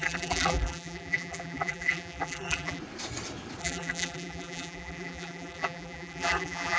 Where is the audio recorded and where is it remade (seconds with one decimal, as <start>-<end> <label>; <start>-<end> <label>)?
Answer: 0.0-2.8 remade; 2.8-3.6 recorded; 3.6-6.8 remade